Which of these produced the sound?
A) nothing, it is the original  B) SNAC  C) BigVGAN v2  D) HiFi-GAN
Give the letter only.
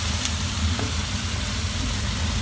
C